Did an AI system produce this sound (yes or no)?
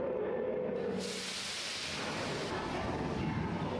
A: no